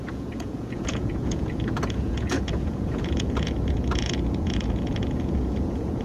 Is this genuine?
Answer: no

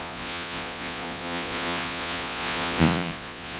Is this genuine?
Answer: no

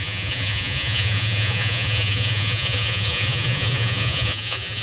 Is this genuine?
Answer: no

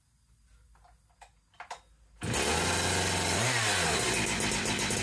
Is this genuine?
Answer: yes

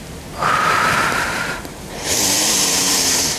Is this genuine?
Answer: no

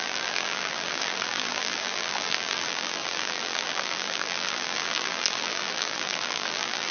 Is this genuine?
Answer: no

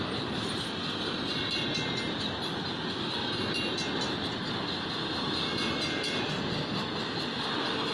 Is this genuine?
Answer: yes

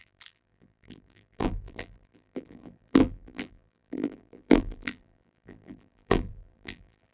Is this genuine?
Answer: no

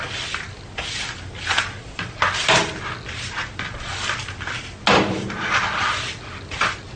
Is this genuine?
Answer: yes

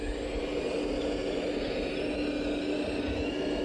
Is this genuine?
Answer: yes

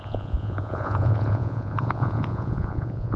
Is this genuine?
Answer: no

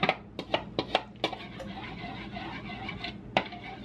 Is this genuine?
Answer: yes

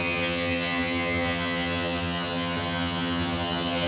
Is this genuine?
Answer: no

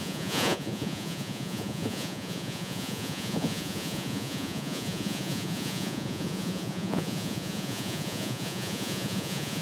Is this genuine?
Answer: no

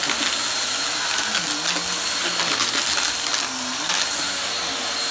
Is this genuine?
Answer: yes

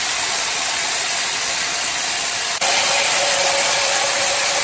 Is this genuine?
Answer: yes